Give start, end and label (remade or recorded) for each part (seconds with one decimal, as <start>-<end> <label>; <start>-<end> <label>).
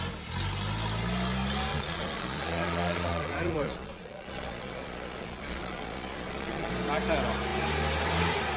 0.0-1.7 recorded; 1.7-6.7 remade; 6.7-8.6 recorded